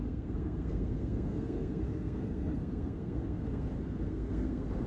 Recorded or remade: remade